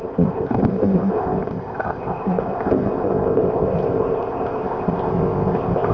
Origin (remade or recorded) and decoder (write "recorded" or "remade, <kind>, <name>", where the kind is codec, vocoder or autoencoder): remade, codec, ZipCodec